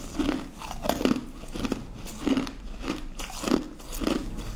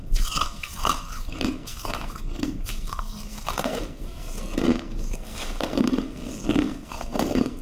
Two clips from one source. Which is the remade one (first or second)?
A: second